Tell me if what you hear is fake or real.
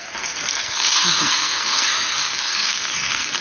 fake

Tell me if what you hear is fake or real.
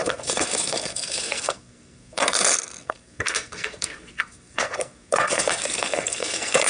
fake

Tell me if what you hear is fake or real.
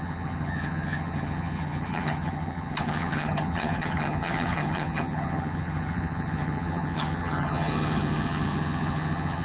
fake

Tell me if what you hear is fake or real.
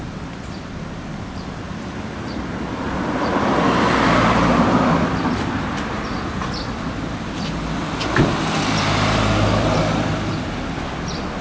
fake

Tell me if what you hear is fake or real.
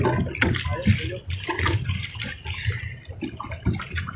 real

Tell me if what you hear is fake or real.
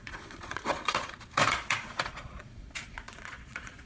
fake